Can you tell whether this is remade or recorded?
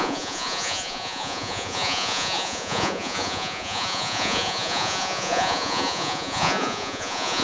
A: remade